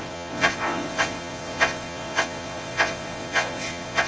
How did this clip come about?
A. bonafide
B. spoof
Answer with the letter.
B